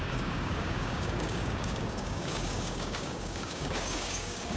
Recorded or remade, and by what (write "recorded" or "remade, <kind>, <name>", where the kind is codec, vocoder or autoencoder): remade, codec, DAC